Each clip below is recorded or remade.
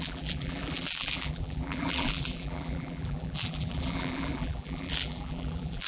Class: remade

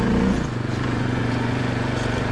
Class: remade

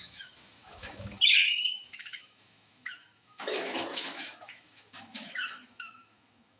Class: remade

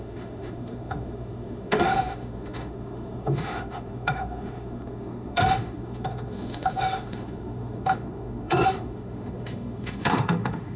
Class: remade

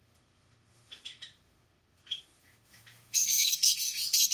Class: remade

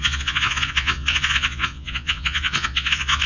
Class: remade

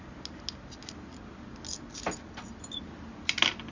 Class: recorded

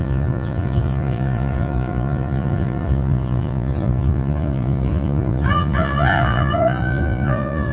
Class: remade